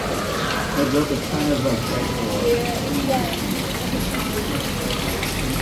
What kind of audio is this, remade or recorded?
recorded